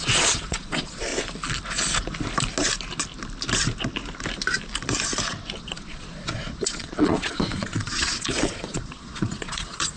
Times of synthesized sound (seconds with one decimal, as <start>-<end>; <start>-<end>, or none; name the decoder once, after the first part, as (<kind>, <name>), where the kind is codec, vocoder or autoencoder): 0.0-1.1 (vocoder, Vocos); 5.6-10.0